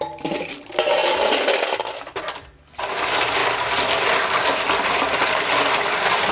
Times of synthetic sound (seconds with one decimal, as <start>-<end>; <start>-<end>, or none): none